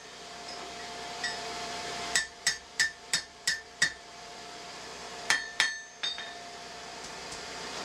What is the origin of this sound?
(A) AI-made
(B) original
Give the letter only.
A